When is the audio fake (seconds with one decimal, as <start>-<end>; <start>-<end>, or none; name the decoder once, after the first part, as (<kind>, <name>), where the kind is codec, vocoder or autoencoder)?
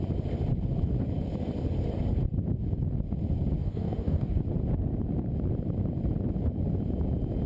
3.6-4.4 (codec, DAC)